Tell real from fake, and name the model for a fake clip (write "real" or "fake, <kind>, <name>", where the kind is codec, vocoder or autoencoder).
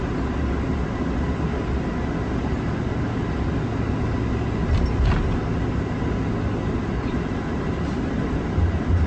real